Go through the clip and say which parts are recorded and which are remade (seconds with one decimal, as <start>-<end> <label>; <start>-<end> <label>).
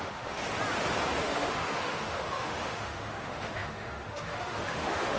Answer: 0.0-0.4 remade; 0.4-1.2 recorded; 1.2-5.2 remade